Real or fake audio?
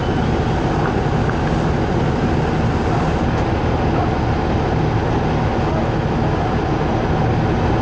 real